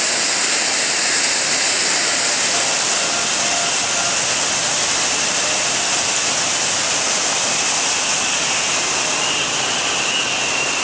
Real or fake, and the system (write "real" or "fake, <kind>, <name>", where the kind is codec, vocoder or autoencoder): real